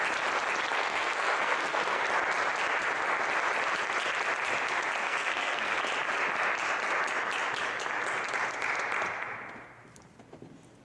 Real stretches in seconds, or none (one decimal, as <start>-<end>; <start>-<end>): 0.0-0.7; 2.0-5.0; 5.8-10.8